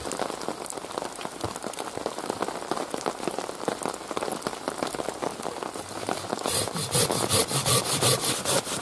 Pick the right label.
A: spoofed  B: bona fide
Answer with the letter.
B